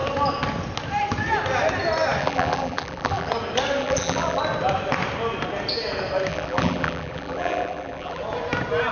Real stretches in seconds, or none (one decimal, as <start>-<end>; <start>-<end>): 0.0-2.2; 3.3-3.8; 4.4-6.3; 8.2-8.9